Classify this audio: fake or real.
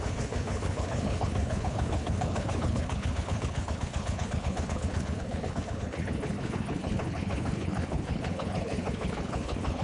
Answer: fake